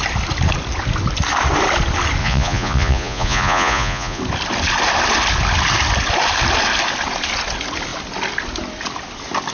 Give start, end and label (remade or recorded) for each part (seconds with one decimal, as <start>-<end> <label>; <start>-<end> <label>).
0.0-2.2 recorded; 2.2-4.2 remade; 4.2-9.5 recorded